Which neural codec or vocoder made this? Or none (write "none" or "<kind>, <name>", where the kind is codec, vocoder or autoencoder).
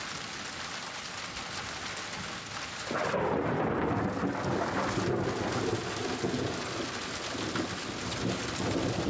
none